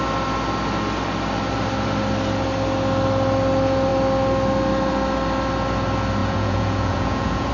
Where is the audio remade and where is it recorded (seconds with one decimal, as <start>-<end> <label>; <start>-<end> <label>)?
0.0-6.2 recorded; 6.2-7.5 remade